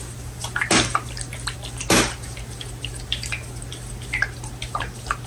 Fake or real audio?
real